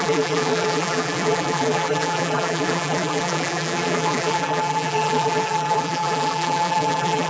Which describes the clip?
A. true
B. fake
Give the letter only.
B